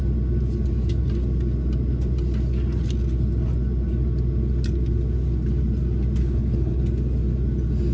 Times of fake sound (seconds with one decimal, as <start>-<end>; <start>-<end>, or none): 6.2-6.8